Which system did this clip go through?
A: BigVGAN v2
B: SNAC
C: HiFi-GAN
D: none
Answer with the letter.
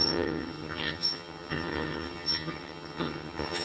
C